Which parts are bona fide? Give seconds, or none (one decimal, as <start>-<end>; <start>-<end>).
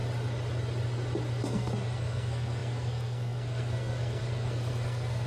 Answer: 0.0-1.4